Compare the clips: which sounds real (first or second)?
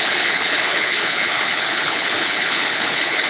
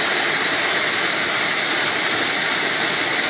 second